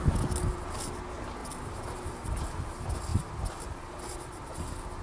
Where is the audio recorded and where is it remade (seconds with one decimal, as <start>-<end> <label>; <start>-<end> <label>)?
0.0-1.4 recorded; 1.4-2.4 remade; 2.4-5.0 recorded